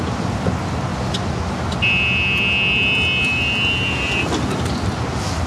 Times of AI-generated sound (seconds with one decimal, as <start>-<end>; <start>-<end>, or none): none